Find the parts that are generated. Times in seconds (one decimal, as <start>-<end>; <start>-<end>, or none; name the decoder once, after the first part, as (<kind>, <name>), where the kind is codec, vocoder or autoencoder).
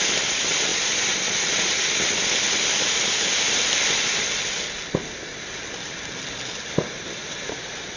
none